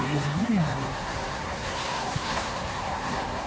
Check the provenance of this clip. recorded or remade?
remade